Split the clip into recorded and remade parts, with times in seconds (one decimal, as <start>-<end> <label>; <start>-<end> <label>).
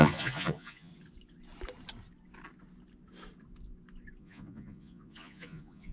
0.0-0.9 remade; 0.9-4.2 recorded; 4.2-5.9 remade